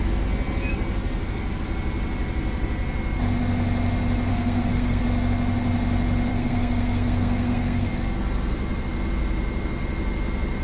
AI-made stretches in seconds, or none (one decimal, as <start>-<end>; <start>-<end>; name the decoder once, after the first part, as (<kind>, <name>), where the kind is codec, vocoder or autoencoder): 4.3-5.0 (codec, SNAC); 6.3-7.9